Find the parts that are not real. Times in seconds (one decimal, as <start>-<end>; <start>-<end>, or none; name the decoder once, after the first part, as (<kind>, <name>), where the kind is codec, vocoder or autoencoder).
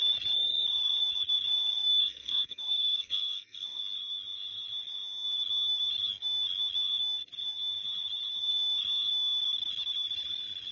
2.0-3.8 (codec, SNAC)